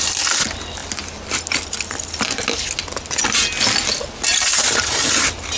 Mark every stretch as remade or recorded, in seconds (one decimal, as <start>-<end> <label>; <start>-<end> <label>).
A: 0.0-5.6 recorded